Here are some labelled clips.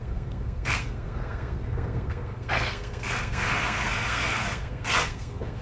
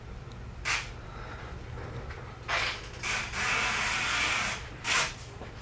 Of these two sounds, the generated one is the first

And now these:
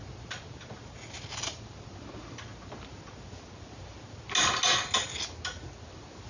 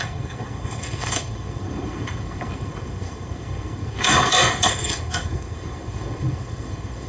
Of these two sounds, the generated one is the second